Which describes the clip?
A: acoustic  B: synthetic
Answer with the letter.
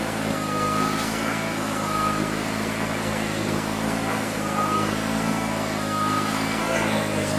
B